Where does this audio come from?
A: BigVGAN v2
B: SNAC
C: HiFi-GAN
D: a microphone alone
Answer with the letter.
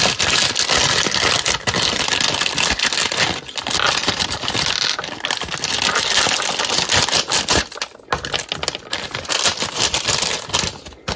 D